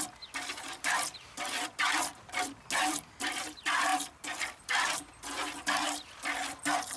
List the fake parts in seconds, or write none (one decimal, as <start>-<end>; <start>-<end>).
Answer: 0.0-2.1; 2.9-7.0